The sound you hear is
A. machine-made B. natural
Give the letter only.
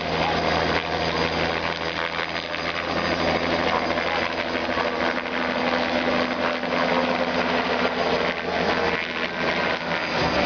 B